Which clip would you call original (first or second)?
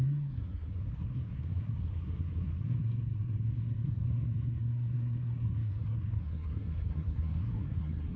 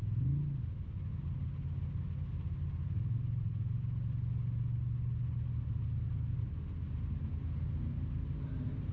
second